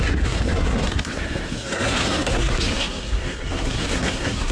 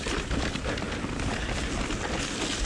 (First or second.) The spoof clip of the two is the first